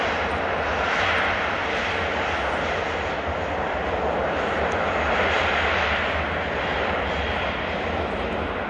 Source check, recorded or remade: recorded